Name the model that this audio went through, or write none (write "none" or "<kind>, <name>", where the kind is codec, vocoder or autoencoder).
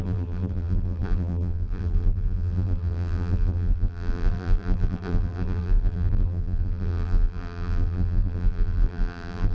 vocoder, BigVGAN v2